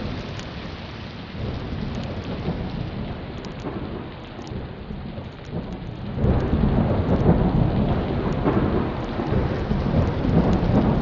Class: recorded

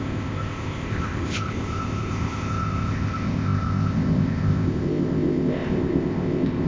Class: remade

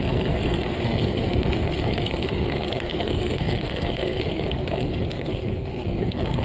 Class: remade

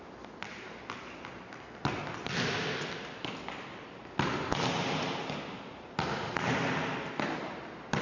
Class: recorded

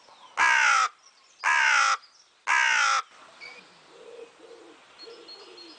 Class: recorded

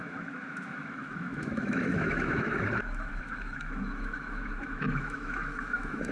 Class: remade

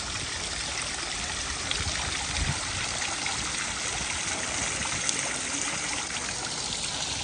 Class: recorded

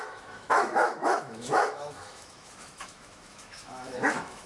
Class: remade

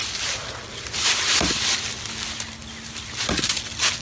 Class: recorded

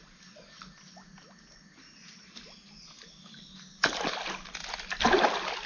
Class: recorded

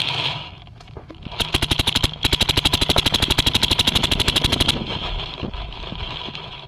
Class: remade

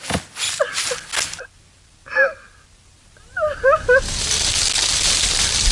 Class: recorded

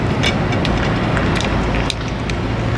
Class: recorded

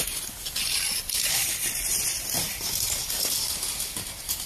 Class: recorded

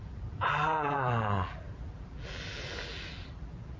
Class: remade